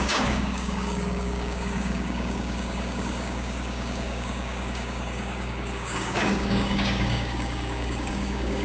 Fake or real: fake